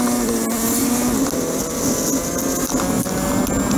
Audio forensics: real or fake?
real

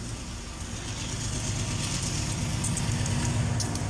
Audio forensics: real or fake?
real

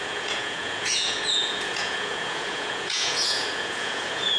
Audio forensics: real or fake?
fake